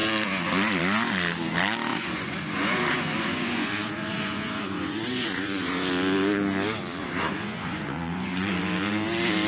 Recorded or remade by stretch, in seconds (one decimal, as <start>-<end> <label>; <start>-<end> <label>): 0.0-1.9 recorded; 1.9-5.9 remade; 5.9-7.0 recorded; 7.0-8.6 remade; 8.6-9.5 recorded